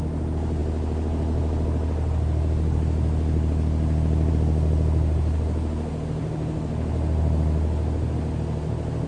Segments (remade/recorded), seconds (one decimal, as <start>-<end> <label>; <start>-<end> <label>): 0.0-9.1 recorded